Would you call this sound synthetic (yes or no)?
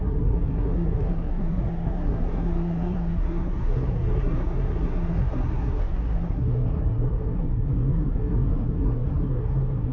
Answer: yes